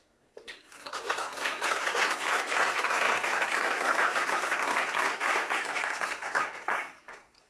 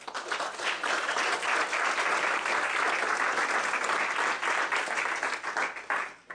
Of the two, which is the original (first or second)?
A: second